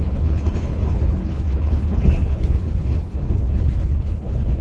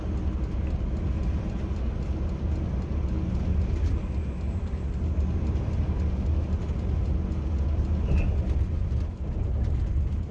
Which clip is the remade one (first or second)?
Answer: first